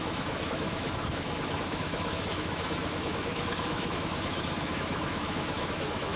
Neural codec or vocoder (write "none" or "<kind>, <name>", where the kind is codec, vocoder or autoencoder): autoencoder, DAC-VAE